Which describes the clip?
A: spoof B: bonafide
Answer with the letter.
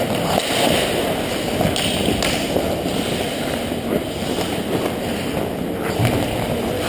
B